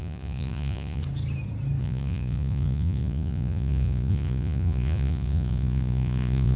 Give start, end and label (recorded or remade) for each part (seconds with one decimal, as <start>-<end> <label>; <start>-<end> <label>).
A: 0.0-1.0 remade; 1.0-1.8 recorded; 1.8-6.6 remade